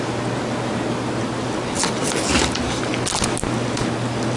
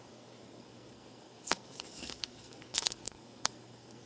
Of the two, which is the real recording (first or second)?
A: first